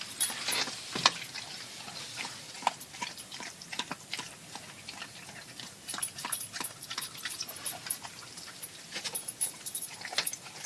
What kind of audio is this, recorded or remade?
remade